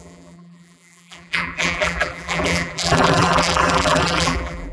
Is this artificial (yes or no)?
yes